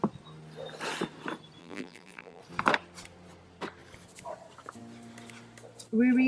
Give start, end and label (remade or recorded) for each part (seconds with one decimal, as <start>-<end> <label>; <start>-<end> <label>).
0.0-1.6 recorded; 1.6-2.4 remade; 2.4-6.3 recorded